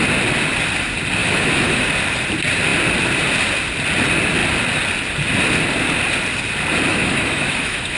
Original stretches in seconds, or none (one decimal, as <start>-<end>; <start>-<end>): 0.0-1.2; 1.8-6.9